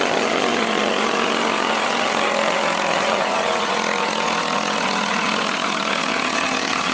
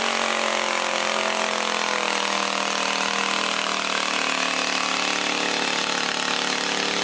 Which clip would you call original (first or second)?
second